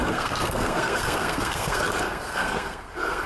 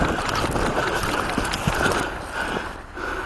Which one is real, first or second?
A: second